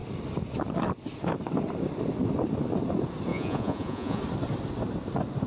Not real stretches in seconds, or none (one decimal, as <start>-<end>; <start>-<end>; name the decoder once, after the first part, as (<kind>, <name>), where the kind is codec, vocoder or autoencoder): 3.3-4.2 (vocoder, Vocos)

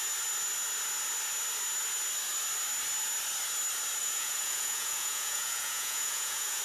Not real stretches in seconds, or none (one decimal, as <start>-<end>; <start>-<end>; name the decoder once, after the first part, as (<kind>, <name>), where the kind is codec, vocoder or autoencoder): 4.0-6.6 (vocoder, Vocos)

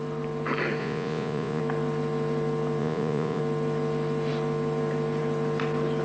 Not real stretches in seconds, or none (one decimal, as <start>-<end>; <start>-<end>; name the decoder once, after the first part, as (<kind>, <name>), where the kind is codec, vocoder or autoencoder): 0.8-1.6 (vocoder, Vocos); 2.8-3.4

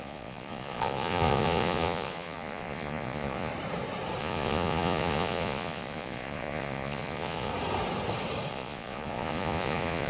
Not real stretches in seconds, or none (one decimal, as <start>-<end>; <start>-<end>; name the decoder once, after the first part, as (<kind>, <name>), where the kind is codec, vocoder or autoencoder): 0.0-3.5 (vocoder, Vocos); 4.2-7.5; 8.5-10.1